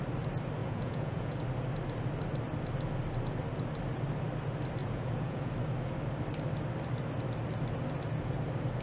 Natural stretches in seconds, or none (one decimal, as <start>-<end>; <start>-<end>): 0.0-0.6; 1.4-4.8; 5.5-8.8